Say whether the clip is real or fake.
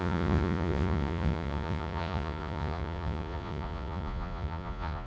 fake